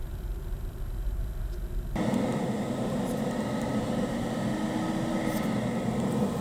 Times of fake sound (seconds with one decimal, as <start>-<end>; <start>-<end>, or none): none